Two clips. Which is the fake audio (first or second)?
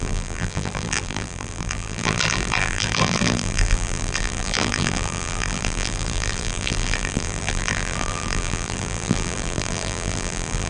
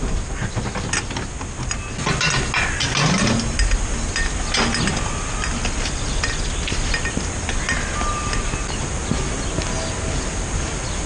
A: first